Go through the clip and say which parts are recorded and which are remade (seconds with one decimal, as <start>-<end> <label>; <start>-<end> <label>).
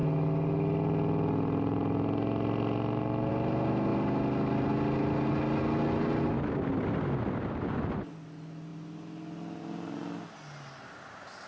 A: 0.0-11.5 recorded